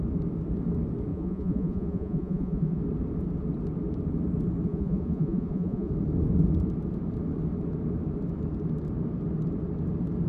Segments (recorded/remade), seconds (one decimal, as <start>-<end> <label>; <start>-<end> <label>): 0.0-1.1 recorded; 1.1-2.8 remade; 2.8-4.7 recorded; 4.7-5.9 remade; 5.9-10.3 recorded